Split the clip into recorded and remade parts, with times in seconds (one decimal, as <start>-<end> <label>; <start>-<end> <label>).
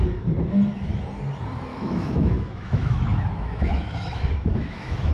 0.0-1.7 recorded; 1.7-5.1 remade